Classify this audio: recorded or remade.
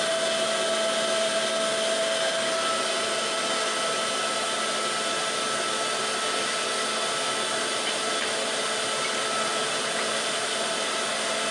recorded